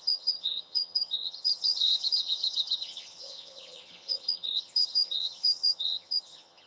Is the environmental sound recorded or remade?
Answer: remade